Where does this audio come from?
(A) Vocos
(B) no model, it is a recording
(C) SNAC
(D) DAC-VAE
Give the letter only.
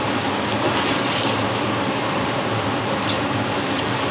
B